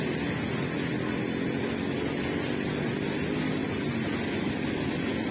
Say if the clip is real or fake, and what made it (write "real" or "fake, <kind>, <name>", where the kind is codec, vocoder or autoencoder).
real